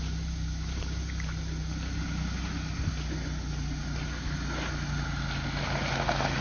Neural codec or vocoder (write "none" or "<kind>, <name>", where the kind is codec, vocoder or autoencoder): none